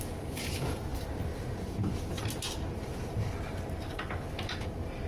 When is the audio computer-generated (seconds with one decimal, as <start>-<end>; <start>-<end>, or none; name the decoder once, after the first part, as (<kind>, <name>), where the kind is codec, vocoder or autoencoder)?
2.9-4.0 (vocoder, BigVGAN v2)